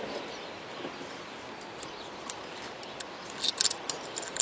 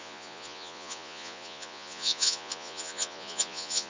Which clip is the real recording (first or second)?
first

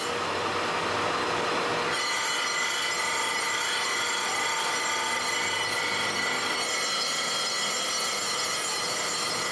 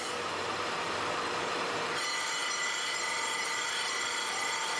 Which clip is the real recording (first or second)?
first